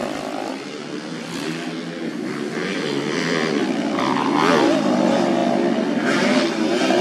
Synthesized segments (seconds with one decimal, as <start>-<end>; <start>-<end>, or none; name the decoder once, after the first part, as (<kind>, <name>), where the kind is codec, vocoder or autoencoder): none